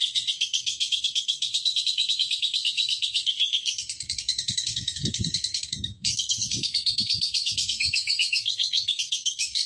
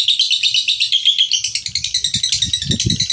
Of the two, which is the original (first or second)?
second